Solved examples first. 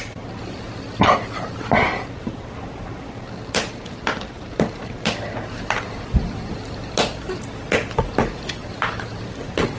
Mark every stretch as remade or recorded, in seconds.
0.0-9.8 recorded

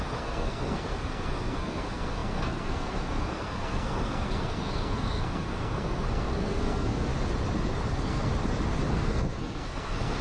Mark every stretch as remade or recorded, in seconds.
0.0-7.1 remade; 7.1-7.9 recorded; 7.9-8.3 remade; 8.3-8.9 recorded; 8.9-10.2 remade

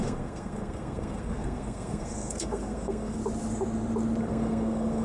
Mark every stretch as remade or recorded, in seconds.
0.0-3.2 remade; 3.2-4.2 recorded; 4.2-5.0 remade

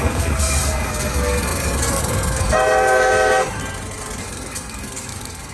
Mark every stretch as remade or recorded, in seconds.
0.0-3.6 remade; 3.6-4.2 recorded; 4.2-5.5 remade

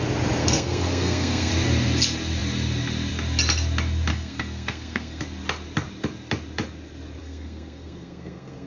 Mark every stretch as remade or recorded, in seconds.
0.0-0.4 recorded; 0.4-1.5 remade; 1.5-4.1 recorded; 4.1-5.2 remade; 5.2-7.2 recorded; 7.2-8.7 remade